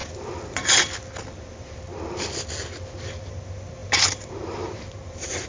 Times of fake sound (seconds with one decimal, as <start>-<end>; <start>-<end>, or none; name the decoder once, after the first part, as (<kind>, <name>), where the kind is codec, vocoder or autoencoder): 3.3-5.5 (vocoder, BigVGAN v2)